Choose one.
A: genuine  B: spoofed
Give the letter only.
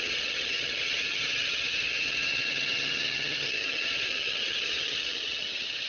B